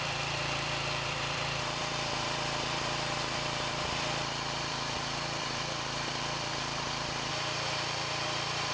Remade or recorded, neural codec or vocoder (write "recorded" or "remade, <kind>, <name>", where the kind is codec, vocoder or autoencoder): remade, vocoder, BigVGAN v2